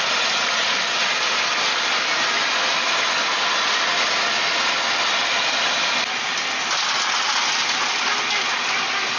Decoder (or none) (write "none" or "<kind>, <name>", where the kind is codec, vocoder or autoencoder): none